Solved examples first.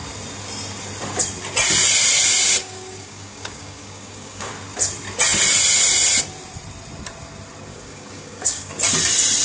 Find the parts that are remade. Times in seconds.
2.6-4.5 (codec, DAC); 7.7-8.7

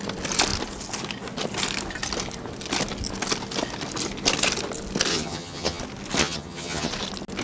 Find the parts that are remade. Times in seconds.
5.1-5.8 (vocoder, HiFi-GAN); 6.2-6.9

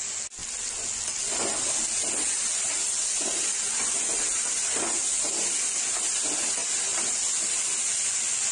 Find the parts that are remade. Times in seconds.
6.6-7.3 (vocoder, BigVGAN v2)

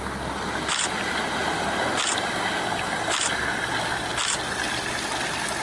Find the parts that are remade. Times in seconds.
none

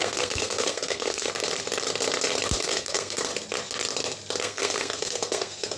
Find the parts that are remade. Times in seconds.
0.0-1.3 (codec, SNAC); 2.6-3.3; 4.4-5.8

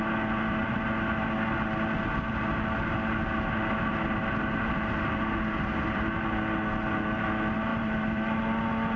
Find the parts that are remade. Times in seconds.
7.7-8.6 (vocoder, BigVGAN v2)

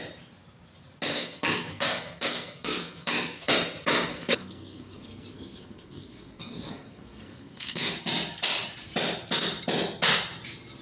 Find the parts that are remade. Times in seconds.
1.1-3.5 (codec, SNAC); 4.1-8.0